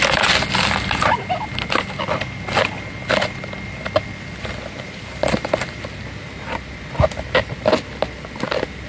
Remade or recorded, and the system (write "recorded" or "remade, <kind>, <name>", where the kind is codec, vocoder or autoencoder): recorded